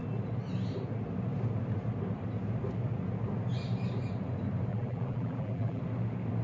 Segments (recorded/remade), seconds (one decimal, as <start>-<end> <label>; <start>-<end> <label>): 0.0-4.7 recorded; 4.7-5.8 remade; 5.8-6.4 recorded